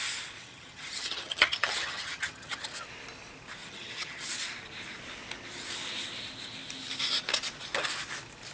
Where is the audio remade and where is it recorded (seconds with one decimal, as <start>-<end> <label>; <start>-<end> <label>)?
0.0-0.4 recorded; 0.4-2.6 remade; 2.6-3.6 recorded; 3.6-4.3 remade; 4.3-8.5 recorded